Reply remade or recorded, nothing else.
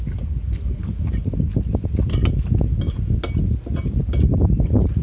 recorded